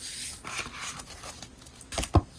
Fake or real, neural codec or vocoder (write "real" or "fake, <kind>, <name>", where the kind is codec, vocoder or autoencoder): real